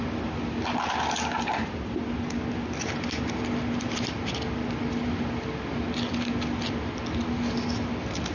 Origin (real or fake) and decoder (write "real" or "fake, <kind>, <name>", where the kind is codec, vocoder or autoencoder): real